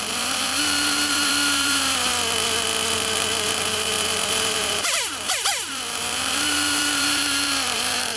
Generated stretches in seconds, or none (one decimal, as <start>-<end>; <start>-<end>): 0.0-2.1; 3.6-8.2